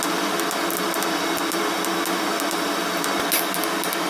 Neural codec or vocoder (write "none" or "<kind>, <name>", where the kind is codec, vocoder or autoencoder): none